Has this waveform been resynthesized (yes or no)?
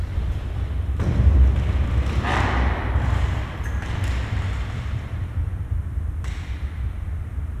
yes